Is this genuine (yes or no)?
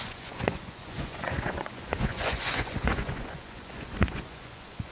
no